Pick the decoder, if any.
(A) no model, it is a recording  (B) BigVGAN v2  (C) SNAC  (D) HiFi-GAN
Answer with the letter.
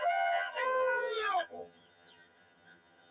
D